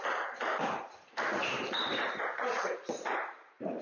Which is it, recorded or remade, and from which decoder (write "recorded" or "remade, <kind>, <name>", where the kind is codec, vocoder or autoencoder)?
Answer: remade, vocoder, BigVGAN v2